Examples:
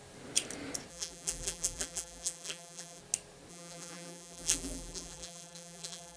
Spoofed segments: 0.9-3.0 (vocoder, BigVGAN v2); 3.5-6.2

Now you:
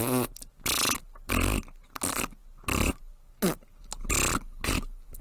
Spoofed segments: none

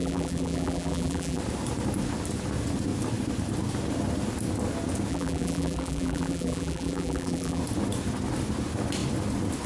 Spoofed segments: 0.0-1.4 (vocoder, BigVGAN v2); 5.1-7.6